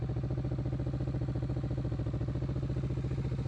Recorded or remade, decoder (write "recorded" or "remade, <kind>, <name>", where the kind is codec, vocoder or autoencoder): recorded